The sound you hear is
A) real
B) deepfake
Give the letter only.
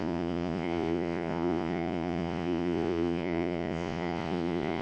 B